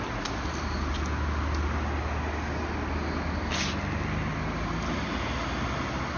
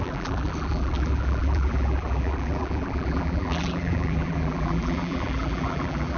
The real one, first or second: first